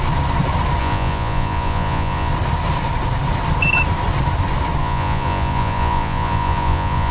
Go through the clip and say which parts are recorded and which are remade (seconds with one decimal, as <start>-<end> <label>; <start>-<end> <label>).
0.0-0.8 recorded; 0.8-2.3 remade; 2.3-4.8 recorded; 4.8-7.1 remade